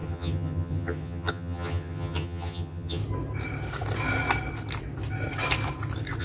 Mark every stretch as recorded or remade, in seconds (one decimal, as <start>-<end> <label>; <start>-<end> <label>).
0.0-3.0 remade; 3.0-6.2 recorded